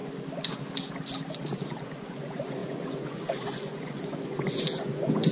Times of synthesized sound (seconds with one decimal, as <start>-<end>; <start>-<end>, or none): 2.1-5.3